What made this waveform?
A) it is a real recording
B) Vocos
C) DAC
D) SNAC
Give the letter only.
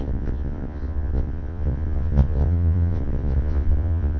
B